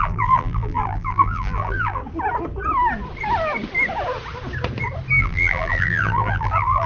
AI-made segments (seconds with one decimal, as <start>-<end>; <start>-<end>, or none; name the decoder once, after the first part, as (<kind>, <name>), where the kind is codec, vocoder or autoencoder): 0.0-2.0 (vocoder, BigVGAN v2); 5.2-6.9